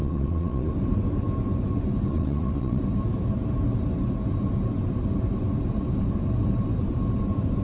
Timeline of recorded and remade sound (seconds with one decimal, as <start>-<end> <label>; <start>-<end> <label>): 0.0-0.7 remade; 0.7-2.1 recorded; 2.1-2.8 remade; 2.8-7.6 recorded